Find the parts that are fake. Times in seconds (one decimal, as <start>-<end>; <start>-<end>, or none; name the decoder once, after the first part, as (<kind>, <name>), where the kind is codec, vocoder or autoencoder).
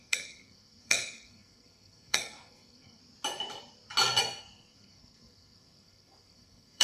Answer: 0.0-3.0 (codec, SNAC); 4.2-6.8